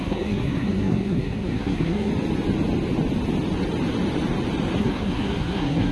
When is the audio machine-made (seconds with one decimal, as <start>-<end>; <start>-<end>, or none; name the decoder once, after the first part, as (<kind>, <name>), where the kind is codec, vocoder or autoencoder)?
0.0-2.1 (codec, SNAC); 4.8-5.9